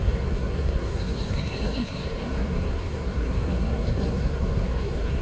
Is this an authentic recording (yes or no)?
no